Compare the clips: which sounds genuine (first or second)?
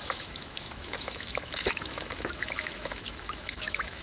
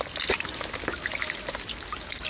second